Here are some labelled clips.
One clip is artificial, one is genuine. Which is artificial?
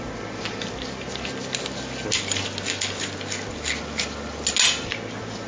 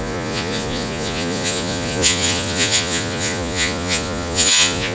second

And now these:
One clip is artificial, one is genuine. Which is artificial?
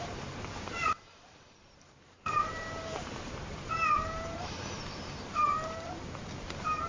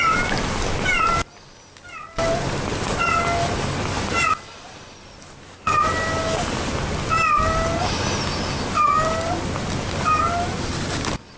first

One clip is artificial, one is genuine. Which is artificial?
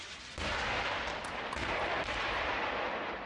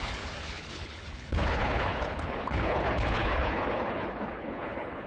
second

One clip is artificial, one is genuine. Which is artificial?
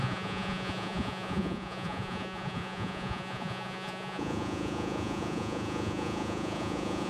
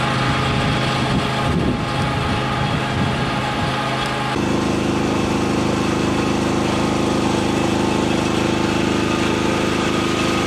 first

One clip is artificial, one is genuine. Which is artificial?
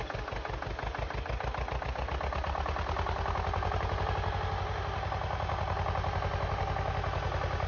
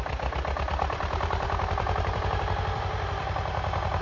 second